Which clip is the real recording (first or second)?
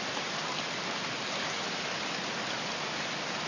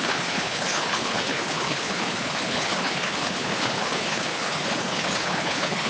first